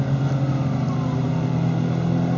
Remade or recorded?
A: recorded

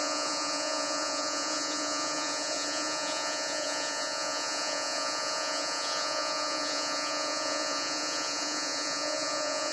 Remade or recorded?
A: remade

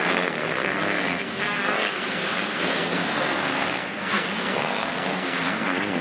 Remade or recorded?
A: remade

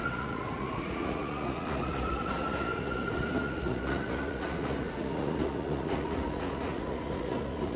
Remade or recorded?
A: remade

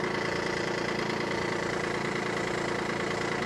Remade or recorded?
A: recorded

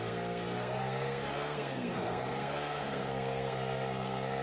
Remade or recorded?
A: remade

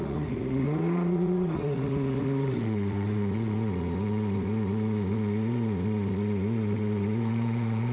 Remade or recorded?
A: remade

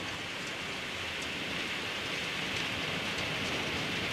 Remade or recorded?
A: recorded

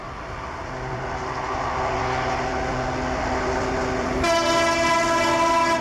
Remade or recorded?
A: recorded